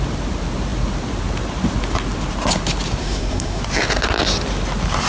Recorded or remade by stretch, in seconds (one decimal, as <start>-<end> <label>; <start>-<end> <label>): 0.0-3.0 recorded; 3.0-3.6 remade; 3.6-5.1 recorded

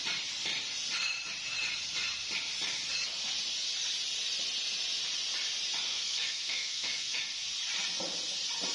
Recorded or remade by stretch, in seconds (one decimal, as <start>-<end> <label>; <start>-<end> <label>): 0.0-5.9 recorded; 5.9-7.2 remade; 7.2-8.7 recorded